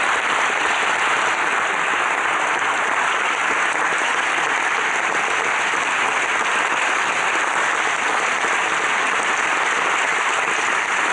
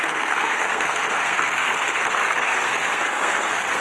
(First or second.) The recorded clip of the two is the first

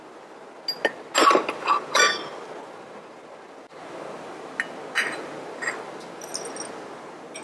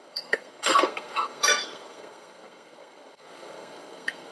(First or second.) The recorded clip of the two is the first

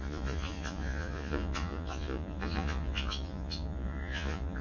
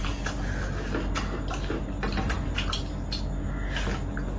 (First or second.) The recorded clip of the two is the second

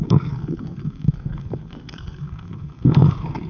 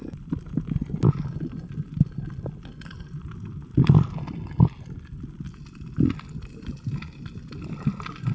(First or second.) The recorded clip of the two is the second